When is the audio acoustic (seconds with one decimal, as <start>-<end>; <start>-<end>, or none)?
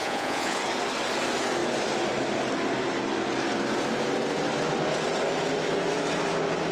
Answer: 0.6-6.7